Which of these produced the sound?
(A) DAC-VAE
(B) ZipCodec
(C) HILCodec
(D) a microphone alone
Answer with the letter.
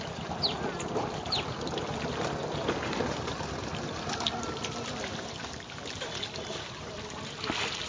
D